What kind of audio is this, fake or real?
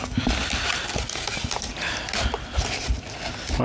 real